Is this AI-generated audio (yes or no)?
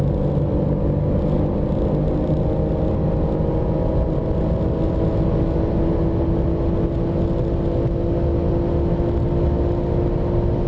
no